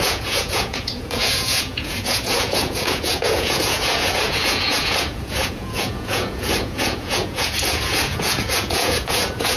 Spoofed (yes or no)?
yes